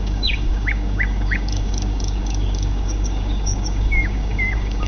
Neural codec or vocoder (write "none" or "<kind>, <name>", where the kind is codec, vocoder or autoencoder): codec, DAC